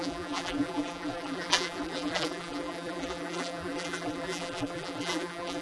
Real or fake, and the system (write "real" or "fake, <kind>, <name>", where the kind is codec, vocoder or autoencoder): fake, vocoder, BigVGAN v2